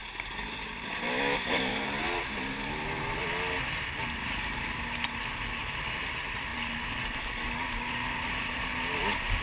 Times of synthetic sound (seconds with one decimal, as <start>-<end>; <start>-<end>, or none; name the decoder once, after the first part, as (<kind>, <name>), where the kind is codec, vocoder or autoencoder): none